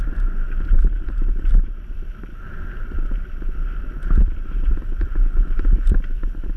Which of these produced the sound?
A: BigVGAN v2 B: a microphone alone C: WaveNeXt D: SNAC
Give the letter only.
B